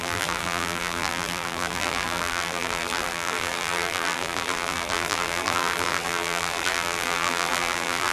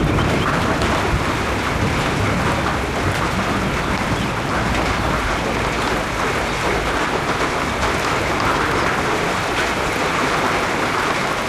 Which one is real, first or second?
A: second